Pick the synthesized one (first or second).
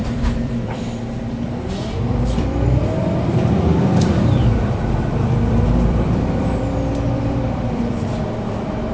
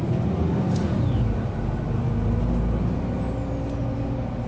first